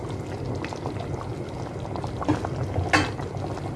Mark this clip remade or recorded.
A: recorded